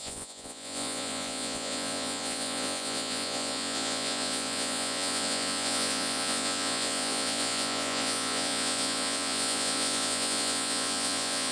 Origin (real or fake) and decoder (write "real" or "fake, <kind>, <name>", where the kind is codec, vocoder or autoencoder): fake, vocoder, Vocos